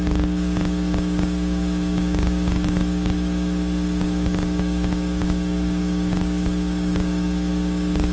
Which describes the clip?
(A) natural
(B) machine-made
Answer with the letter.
B